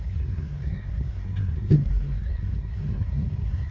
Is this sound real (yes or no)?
no